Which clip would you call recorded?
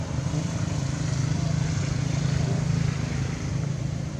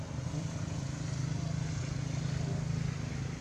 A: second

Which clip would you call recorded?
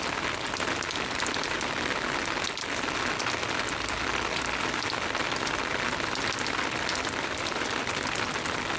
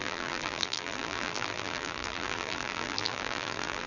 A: first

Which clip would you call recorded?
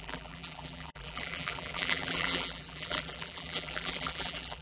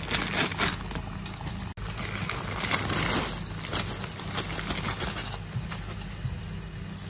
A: second